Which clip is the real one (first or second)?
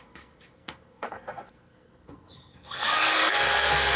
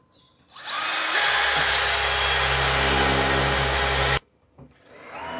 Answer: second